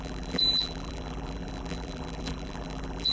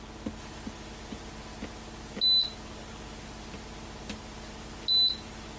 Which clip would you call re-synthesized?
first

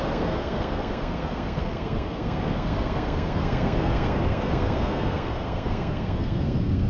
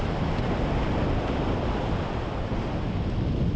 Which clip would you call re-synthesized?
first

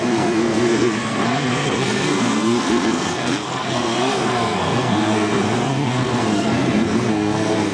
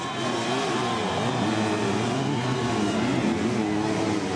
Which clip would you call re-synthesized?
first